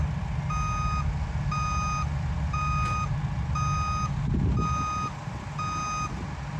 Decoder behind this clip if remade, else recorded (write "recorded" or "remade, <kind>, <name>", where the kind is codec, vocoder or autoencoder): recorded